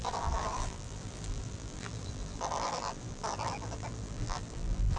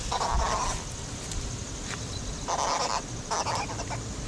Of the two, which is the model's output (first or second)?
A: first